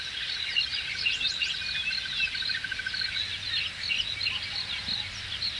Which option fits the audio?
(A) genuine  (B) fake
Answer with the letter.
A